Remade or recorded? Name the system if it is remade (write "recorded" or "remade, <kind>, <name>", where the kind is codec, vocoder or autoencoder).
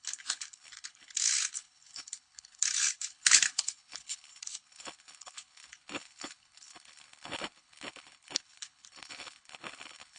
remade, codec, HILCodec